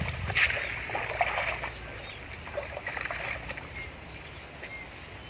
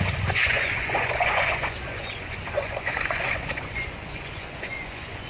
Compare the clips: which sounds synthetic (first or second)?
second